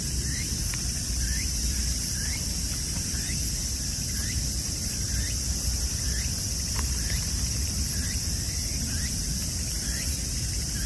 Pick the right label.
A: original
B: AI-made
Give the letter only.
B